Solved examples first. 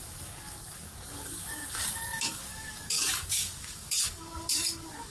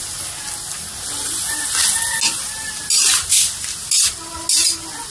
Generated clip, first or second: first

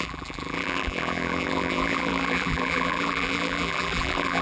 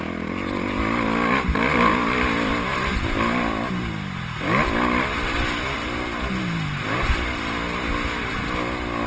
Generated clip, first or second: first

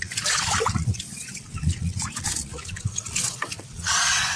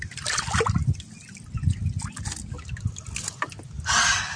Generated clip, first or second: first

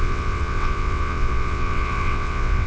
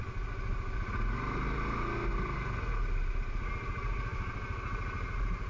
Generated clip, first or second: first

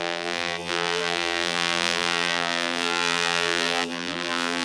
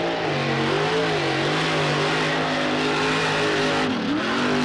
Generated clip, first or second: first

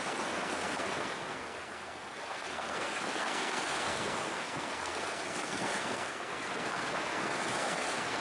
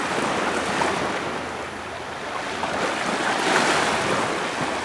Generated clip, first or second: first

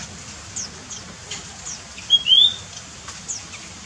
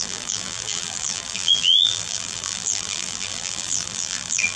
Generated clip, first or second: second